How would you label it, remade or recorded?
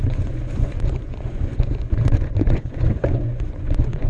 remade